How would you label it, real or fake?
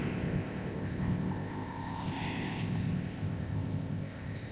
fake